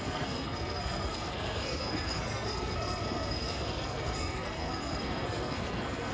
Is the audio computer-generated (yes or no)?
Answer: yes